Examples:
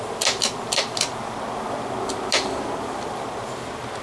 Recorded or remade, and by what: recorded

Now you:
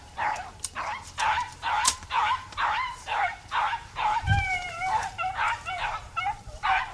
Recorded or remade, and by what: remade, vocoder, BigVGAN v2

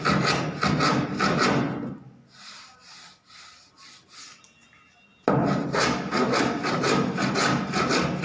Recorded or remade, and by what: recorded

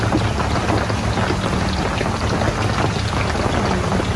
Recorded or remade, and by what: recorded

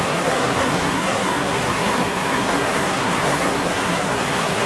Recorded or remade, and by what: remade, codec, SNAC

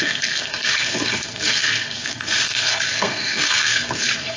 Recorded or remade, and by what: remade, codec, SNAC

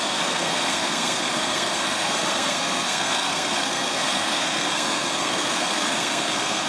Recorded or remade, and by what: remade, codec, SNAC